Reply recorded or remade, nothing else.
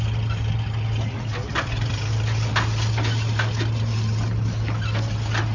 recorded